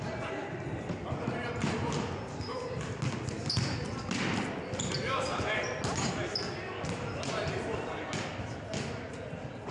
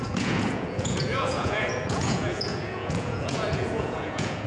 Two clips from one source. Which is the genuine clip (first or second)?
first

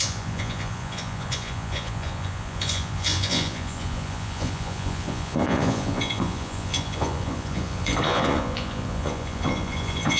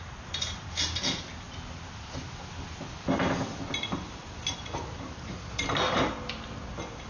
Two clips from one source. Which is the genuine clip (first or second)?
second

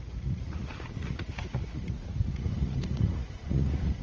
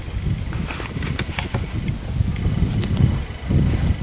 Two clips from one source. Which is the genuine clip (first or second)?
second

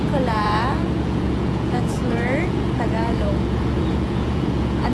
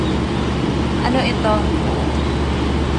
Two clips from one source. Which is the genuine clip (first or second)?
second